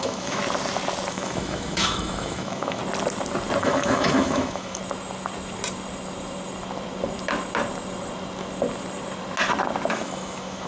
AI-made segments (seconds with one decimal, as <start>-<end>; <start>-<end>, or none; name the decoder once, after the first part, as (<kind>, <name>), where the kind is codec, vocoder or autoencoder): 0.0-0.4 (autoencoder, DAC-VAE); 1.1-2.8; 3.6-4.8; 9.9-10.7